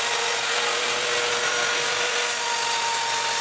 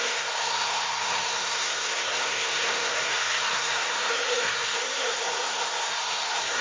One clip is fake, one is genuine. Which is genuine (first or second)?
first